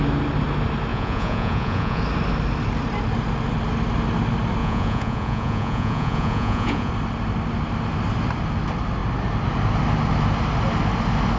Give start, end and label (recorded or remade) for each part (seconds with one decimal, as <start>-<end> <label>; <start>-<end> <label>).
0.0-0.9 recorded; 0.9-2.0 remade; 2.0-4.6 recorded; 4.6-6.9 remade; 6.9-11.4 recorded